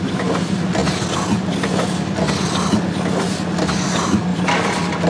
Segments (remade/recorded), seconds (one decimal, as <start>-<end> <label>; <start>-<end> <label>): 0.0-4.3 recorded; 4.3-5.1 remade